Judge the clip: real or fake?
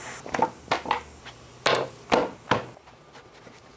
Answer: real